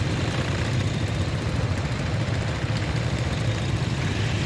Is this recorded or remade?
recorded